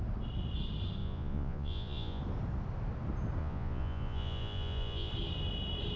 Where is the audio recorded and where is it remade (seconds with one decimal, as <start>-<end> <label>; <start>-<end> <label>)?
0.0-1.0 recorded; 1.0-2.2 remade; 2.2-3.4 recorded; 3.4-5.1 remade; 5.1-6.0 recorded